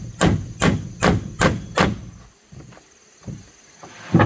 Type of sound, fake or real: real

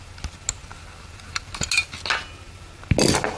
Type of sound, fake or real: real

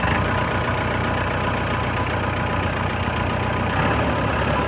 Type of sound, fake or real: real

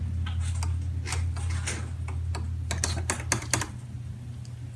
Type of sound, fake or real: real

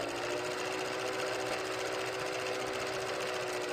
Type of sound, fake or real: real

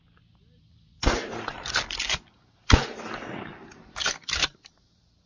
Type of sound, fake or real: real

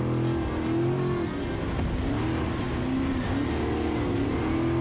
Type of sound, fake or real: real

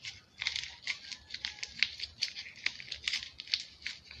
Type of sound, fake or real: real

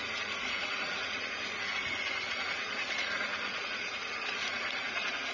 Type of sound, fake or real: fake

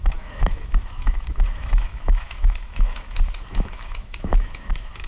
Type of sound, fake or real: fake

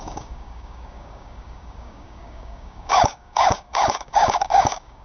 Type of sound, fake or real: fake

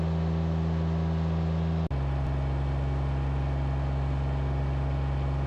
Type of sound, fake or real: real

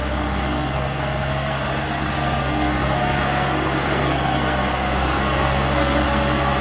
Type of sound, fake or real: fake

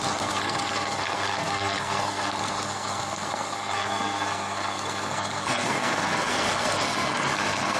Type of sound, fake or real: fake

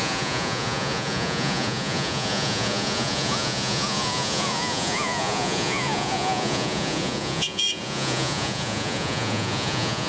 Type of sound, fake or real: fake